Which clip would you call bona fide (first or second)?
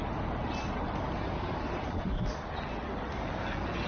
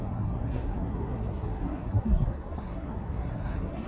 first